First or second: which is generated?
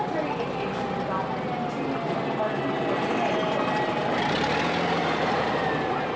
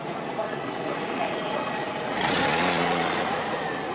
second